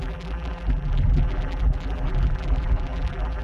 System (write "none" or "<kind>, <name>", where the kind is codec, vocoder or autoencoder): vocoder, BigVGAN v2